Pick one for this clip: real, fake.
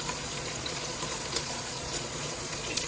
fake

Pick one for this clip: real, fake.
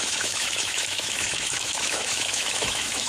fake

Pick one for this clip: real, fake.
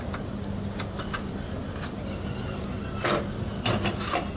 real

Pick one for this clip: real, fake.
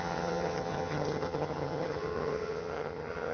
fake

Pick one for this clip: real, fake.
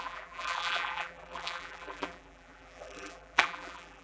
fake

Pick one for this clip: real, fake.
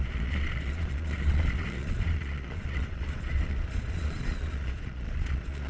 fake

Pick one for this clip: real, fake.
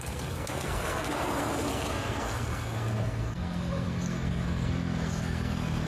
fake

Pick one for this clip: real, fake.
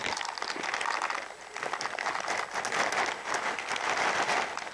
real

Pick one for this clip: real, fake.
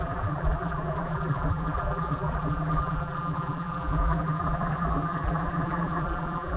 fake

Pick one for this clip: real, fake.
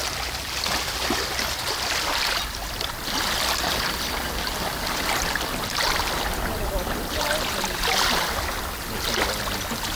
real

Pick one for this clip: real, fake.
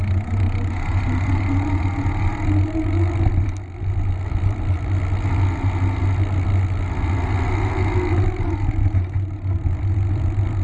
real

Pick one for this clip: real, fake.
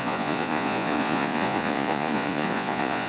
fake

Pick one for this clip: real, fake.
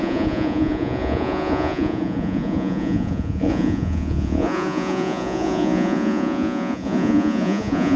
fake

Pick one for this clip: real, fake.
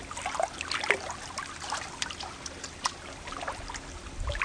real